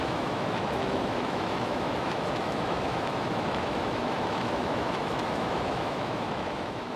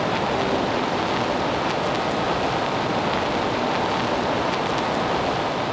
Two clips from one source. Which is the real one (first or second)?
second